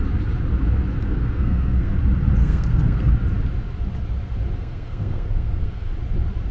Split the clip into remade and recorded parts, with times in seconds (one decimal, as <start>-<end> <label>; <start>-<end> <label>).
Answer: 0.0-1.0 recorded; 1.0-2.0 remade; 2.0-2.4 recorded; 2.4-3.1 remade; 3.1-4.6 recorded; 4.6-5.9 remade; 5.9-6.5 recorded